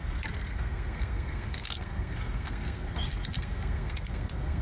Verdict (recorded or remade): remade